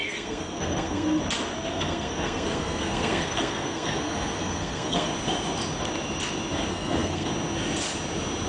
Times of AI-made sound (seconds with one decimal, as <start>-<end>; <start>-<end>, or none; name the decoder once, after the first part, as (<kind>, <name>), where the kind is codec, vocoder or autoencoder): 0.0-1.2 (codec, SNAC); 1.7-5.1; 6.7-7.3